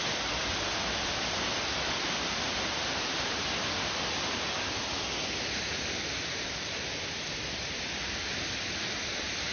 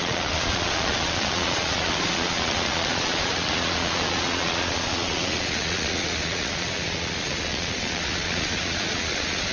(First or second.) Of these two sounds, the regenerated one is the second